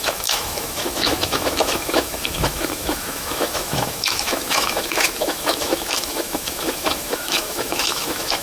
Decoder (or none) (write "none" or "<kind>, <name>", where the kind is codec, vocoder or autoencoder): autoencoder, DAC-VAE